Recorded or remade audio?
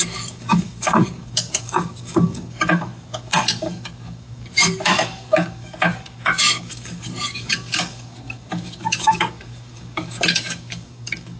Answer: remade